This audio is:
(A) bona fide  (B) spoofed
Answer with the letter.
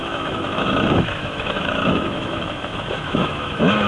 B